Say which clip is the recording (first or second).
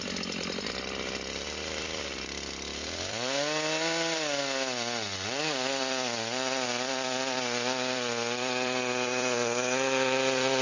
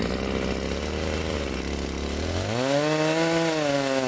second